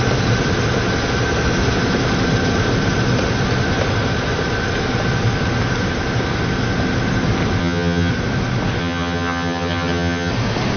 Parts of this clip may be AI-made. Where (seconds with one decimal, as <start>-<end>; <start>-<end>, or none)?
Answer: 7.6-8.1; 8.8-10.3